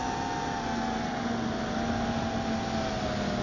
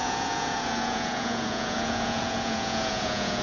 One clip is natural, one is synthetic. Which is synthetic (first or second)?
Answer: second